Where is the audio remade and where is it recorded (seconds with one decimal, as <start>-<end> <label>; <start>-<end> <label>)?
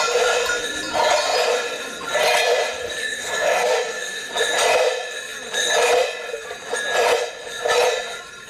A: 0.0-3.0 recorded; 3.0-4.3 remade; 4.3-8.5 recorded